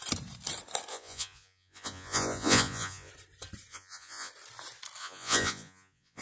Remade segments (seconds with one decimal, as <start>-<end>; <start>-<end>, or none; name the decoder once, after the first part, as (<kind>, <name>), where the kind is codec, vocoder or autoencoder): 0.9-3.1 (vocoder, Vocos); 3.7-4.3; 5.0-6.2